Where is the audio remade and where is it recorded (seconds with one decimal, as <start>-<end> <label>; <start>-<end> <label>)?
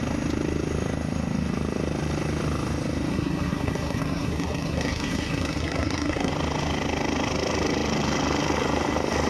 0.0-3.1 recorded; 3.1-6.3 remade; 6.3-9.3 recorded